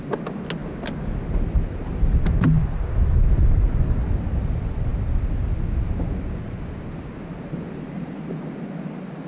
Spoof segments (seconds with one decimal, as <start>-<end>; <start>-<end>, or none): none